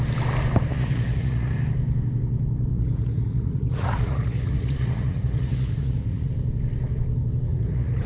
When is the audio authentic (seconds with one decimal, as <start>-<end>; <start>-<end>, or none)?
0.0-0.7; 1.5-2.7; 6.3-7.5